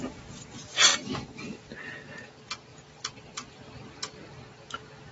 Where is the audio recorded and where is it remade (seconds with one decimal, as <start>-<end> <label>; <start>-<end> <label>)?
0.0-2.7 recorded; 2.7-3.6 remade; 3.6-5.1 recorded